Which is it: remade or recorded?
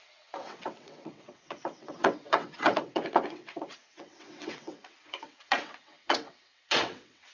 remade